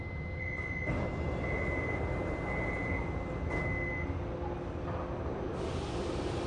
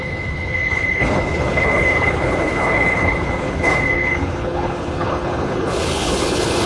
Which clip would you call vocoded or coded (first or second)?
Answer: second